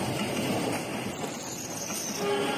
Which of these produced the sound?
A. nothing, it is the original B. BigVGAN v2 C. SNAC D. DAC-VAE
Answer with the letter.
A